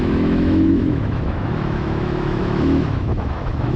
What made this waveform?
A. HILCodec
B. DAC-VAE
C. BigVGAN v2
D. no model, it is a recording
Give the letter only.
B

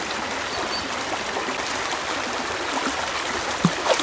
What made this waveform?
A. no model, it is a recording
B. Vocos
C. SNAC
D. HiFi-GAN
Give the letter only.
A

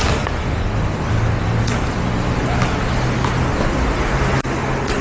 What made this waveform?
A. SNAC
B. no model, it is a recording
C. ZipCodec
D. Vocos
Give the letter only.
B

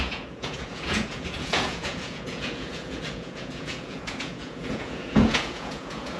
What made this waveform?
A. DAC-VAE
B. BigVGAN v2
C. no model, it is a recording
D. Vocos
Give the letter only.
D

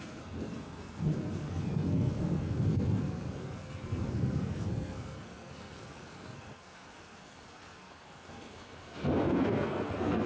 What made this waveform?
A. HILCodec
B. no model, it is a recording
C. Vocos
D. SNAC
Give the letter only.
D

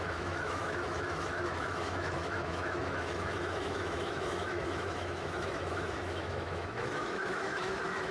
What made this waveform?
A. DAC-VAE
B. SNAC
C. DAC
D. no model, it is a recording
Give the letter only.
A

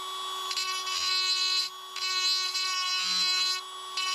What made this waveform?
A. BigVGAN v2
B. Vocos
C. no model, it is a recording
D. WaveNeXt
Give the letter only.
C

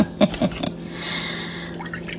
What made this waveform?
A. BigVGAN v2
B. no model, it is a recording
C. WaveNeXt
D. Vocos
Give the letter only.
B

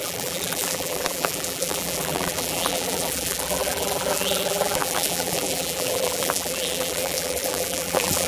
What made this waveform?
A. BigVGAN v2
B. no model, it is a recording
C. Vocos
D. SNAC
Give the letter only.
A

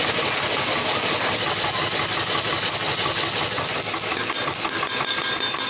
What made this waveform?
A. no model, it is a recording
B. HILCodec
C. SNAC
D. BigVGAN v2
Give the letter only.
A